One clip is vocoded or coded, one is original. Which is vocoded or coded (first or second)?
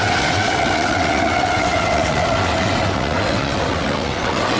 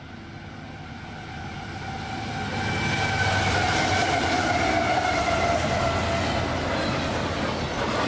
first